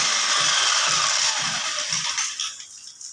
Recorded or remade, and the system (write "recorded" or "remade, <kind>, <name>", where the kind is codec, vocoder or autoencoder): recorded